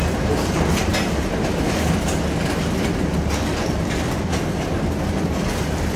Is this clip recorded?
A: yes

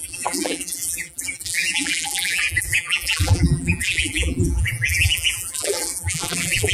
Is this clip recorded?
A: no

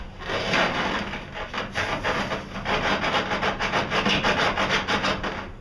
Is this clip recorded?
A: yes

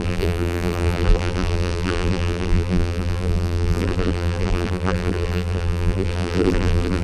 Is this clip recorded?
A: no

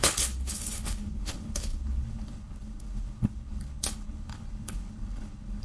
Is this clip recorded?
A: no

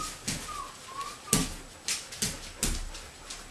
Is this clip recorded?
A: yes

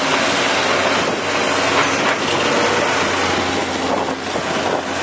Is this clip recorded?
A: yes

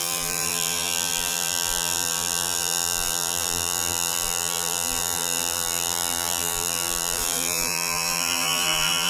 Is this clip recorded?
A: no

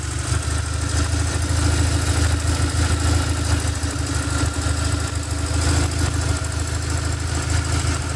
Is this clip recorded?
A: yes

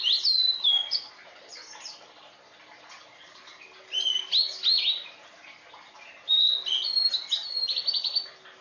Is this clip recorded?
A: yes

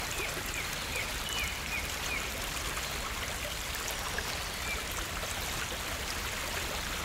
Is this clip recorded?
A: yes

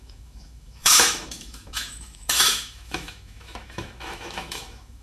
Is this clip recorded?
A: no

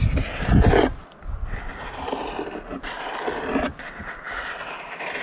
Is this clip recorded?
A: yes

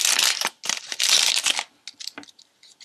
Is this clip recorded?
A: yes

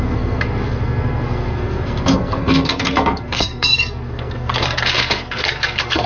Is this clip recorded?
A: no